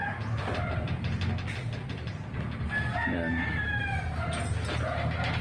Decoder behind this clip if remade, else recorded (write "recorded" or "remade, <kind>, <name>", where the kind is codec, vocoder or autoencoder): recorded